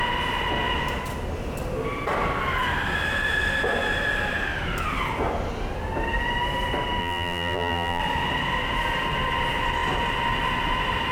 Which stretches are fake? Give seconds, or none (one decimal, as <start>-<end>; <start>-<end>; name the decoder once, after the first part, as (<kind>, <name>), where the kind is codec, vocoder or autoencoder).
7.0-8.0 (vocoder, BigVGAN v2)